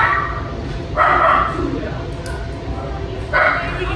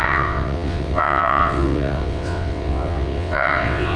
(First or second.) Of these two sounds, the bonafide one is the first